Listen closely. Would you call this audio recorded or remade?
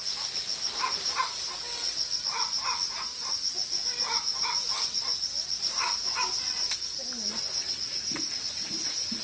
recorded